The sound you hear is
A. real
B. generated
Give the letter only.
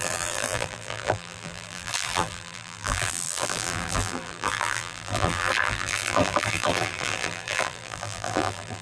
B